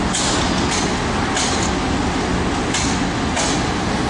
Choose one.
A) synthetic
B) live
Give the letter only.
B